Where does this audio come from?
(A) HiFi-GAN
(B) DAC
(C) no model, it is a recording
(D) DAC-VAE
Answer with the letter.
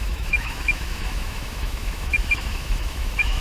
D